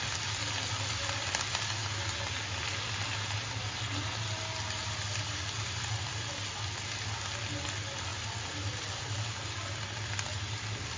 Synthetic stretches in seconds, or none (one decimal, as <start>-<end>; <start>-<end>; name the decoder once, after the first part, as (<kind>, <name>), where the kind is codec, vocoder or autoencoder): 0.4-1.3 (vocoder, BigVGAN v2); 8.1-9.0